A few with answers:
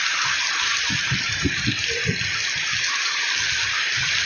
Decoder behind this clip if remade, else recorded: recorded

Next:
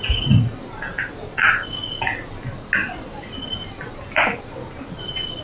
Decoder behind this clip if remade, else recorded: recorded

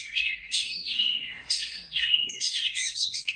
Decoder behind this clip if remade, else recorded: remade, codec, SNAC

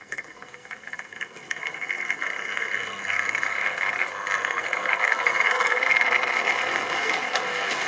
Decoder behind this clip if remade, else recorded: remade, codec, SNAC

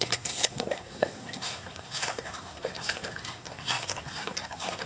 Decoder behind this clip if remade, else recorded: remade, codec, SNAC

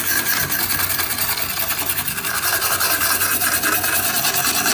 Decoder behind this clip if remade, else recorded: recorded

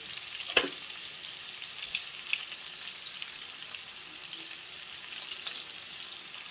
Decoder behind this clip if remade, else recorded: recorded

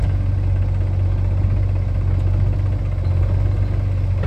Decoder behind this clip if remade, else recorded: recorded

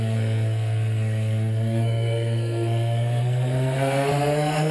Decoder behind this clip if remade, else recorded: remade, codec, SNAC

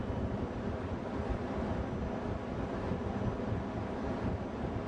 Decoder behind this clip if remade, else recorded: recorded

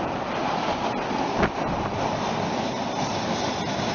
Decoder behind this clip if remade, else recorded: recorded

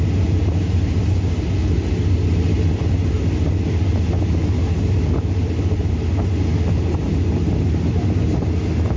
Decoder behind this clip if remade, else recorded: recorded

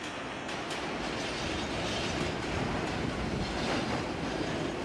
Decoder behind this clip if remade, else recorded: recorded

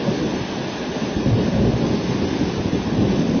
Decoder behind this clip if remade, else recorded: recorded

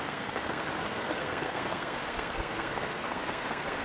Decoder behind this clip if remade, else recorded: remade, codec, SNAC